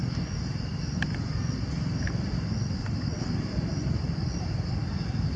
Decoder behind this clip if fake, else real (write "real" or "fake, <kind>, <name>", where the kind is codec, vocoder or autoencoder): real